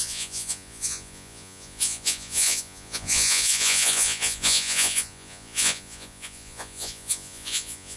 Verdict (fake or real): fake